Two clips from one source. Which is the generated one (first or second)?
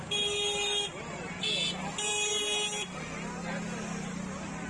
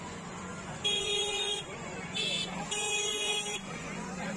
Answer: second